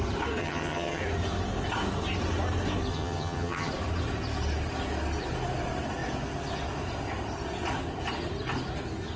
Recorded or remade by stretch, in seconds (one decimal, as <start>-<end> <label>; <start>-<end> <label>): 0.0-0.4 recorded; 0.4-1.0 remade; 1.0-2.9 recorded; 2.9-3.7 remade; 3.7-9.2 recorded

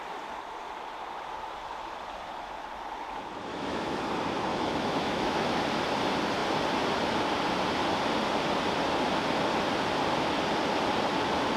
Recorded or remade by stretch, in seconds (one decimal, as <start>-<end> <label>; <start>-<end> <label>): 0.0-3.5 recorded; 3.5-4.0 remade; 4.0-4.5 recorded; 4.5-5.6 remade; 5.6-11.6 recorded

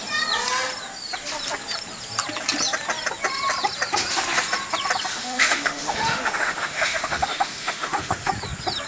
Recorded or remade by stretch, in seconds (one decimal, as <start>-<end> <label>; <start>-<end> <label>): 0.0-5.1 recorded; 5.1-8.3 remade; 8.3-8.9 recorded

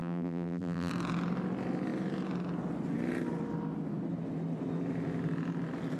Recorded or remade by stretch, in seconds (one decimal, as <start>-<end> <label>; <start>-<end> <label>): 0.0-0.9 remade; 0.9-6.0 recorded

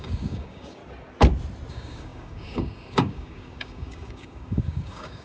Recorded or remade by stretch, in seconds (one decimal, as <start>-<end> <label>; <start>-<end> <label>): 0.0-0.8 remade; 0.8-1.7 recorded; 1.7-5.2 remade

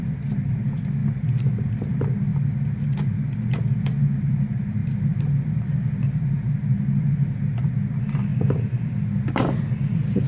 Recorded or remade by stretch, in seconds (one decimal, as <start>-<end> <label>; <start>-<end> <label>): 0.0-1.0 recorded; 1.0-1.9 remade; 1.9-2.3 recorded; 2.3-4.3 remade; 4.3-4.8 recorded; 4.8-6.5 remade; 6.5-10.3 recorded